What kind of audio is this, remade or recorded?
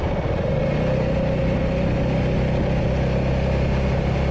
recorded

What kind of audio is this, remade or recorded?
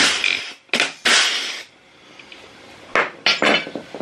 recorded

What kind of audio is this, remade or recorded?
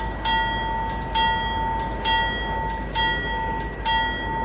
recorded